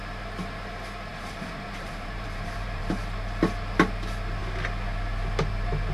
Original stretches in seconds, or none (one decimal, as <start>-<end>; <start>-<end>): 0.0-1.1; 3.0-5.9